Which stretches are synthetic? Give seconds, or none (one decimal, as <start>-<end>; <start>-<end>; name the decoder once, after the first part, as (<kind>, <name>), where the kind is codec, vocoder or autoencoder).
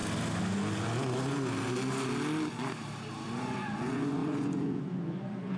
3.4-5.6 (vocoder, Vocos)